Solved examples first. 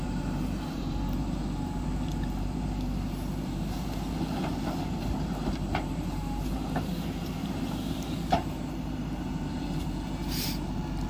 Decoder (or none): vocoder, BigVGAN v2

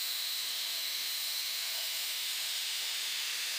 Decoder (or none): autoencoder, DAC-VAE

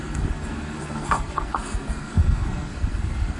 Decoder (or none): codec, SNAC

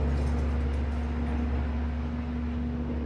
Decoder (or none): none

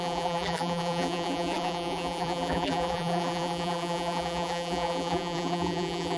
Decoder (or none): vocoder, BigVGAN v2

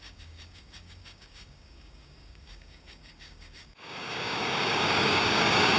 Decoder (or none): codec, DAC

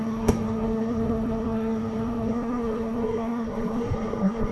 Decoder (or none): codec, SNAC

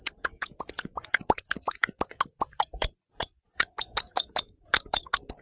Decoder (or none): vocoder, Vocos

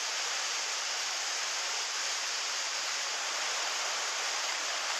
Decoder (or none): vocoder, BigVGAN v2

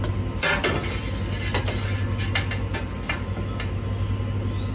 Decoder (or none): none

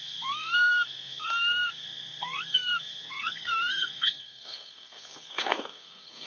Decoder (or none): codec, SNAC